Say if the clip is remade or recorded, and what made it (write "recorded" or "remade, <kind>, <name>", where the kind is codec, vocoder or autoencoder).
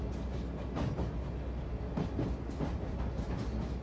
recorded